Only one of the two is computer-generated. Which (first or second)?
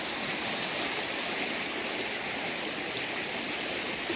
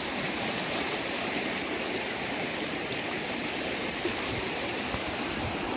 second